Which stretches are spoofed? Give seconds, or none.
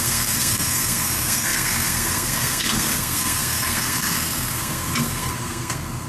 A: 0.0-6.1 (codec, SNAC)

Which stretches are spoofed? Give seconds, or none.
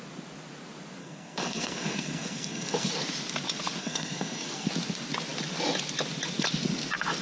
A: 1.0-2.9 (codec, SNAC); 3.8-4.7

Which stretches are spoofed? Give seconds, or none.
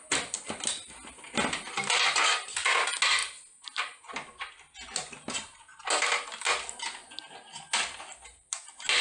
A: none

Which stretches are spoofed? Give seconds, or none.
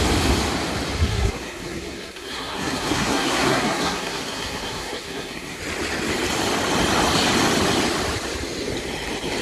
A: 1.0-5.6 (codec, SNAC)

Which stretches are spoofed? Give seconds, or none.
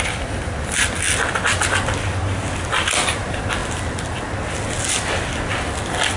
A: none